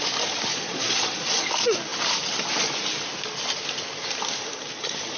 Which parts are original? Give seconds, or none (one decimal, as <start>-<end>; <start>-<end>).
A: 0.0-0.5; 1.5-5.2

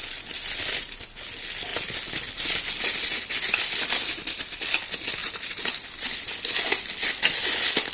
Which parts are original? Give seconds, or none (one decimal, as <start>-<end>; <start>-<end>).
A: 0.0-5.2; 5.7-7.9